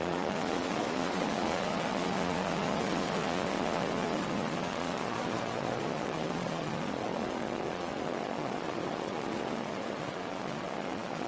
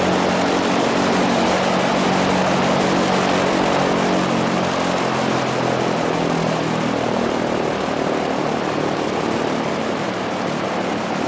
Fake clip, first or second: first